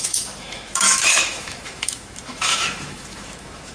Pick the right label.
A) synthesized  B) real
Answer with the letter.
A